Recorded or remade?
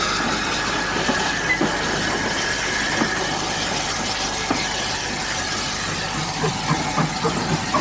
remade